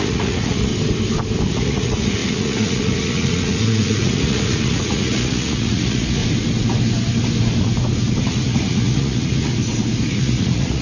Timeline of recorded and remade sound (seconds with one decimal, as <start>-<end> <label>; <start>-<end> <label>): 0.0-0.7 remade; 0.7-1.5 recorded; 1.5-6.2 remade; 6.2-8.2 recorded; 8.2-9.5 remade; 9.5-10.1 recorded; 10.1-10.8 remade